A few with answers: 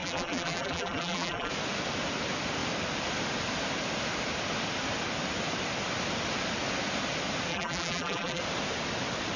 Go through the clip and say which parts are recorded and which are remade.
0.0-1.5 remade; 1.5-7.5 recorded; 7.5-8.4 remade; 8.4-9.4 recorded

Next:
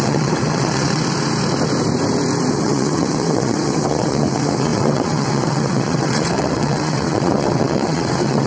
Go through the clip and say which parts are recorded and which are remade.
0.0-1.0 remade; 1.0-2.5 recorded; 2.5-8.5 remade

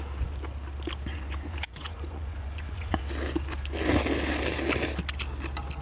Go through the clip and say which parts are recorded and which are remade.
0.0-1.1 recorded; 1.1-3.0 remade; 3.0-5.8 recorded